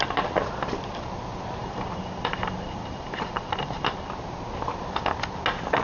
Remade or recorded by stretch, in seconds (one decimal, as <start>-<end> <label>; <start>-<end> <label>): 0.0-1.6 recorded; 1.6-4.1 remade; 4.1-5.8 recorded

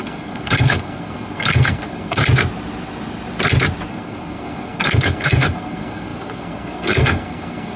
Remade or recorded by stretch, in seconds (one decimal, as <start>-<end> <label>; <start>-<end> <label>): 0.0-2.2 remade; 2.2-3.9 recorded; 3.9-7.8 remade

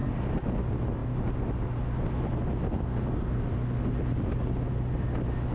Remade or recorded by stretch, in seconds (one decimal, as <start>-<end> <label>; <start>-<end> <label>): 0.0-5.5 recorded

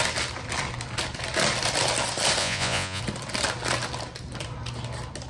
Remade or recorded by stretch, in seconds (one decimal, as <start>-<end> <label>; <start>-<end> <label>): 0.0-2.4 recorded; 2.4-3.0 remade; 3.0-5.3 recorded

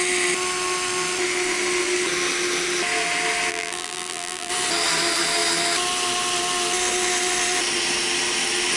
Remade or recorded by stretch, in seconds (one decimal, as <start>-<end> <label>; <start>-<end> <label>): 0.0-3.5 recorded; 3.5-4.5 remade; 4.5-8.8 recorded

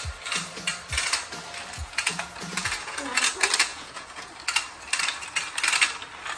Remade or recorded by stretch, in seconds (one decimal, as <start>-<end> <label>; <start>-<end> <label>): 0.0-1.8 recorded; 1.8-3.2 remade; 3.2-3.7 recorded; 3.7-4.3 remade; 4.3-6.4 recorded